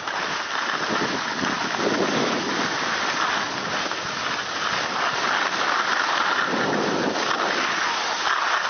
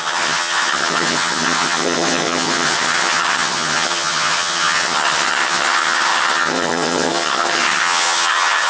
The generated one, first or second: second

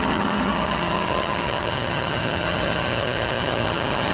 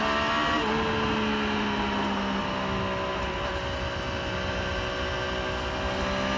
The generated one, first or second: first